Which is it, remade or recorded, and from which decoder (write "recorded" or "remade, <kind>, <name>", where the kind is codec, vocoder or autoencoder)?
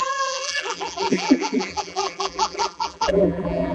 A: remade, vocoder, BigVGAN v2